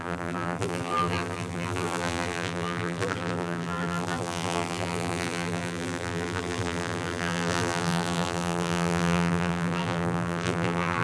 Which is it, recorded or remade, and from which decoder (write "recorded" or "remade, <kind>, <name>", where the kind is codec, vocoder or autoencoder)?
remade, vocoder, BigVGAN v2